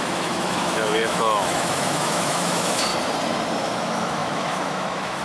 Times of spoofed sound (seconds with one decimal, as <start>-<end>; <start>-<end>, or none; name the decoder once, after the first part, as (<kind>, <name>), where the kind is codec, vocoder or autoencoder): 0.0-2.9 (autoencoder, DAC-VAE); 3.6-5.2

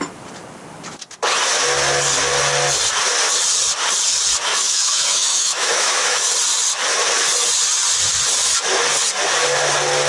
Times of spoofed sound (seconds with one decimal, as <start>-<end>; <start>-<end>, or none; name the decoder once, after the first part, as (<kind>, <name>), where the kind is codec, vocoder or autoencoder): 4.5-6.3 (autoencoder, DAC-VAE)

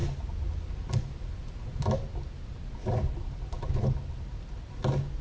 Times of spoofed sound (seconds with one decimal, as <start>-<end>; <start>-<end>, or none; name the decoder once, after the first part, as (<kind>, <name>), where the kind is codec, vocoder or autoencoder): none

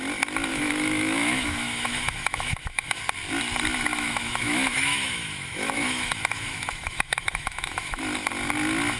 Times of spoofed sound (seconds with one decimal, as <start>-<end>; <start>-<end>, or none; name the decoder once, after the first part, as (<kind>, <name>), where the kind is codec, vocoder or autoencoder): 0.5-3.0 (autoencoder, DAC-VAE); 3.9-8.0

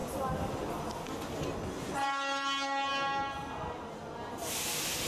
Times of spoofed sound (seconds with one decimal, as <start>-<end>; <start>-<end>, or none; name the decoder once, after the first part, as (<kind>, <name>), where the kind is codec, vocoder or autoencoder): none

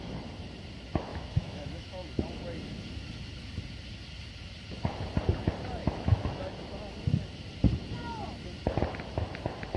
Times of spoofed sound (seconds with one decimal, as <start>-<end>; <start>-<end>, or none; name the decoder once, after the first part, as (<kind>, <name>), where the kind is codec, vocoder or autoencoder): 1.1-2.2 (autoencoder, DAC-VAE); 5.8-6.6